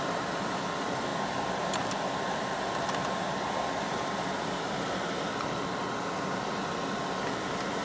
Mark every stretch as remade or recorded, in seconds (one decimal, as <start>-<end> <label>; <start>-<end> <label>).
0.0-7.8 recorded